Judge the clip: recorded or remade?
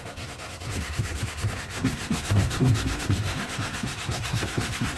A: remade